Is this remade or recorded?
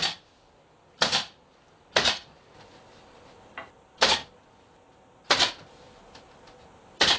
recorded